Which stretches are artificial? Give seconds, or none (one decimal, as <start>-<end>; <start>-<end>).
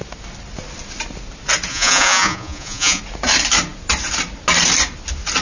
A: 1.7-3.0